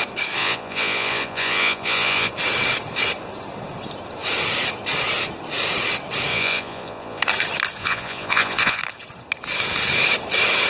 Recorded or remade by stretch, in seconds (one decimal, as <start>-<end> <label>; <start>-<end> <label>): 0.0-0.4 recorded; 0.4-2.3 remade; 2.3-6.3 recorded; 6.3-7.2 remade; 7.2-7.8 recorded; 7.8-8.8 remade; 8.8-10.7 recorded